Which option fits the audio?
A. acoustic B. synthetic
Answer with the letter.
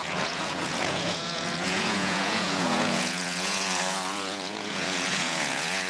B